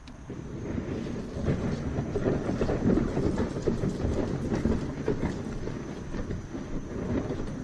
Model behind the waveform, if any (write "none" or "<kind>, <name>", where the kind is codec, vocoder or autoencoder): none